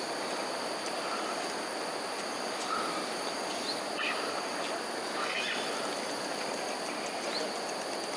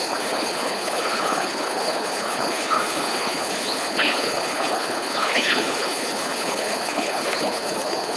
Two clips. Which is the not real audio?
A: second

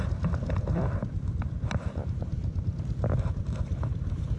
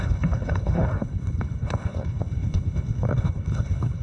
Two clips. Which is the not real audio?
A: second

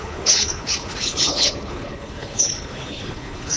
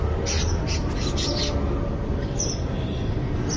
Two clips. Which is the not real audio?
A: first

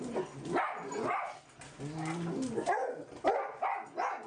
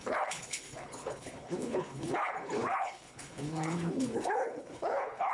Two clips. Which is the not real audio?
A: second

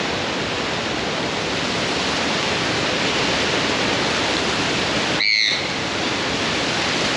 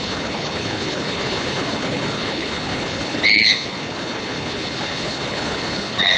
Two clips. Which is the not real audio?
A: second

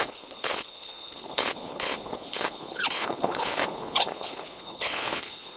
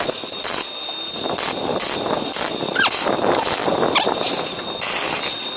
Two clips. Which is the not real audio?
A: first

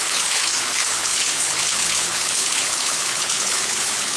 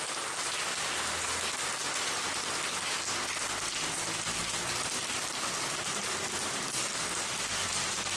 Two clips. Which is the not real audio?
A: first